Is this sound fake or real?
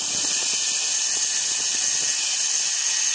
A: real